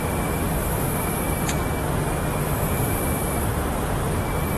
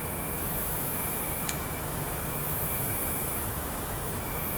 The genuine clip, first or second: first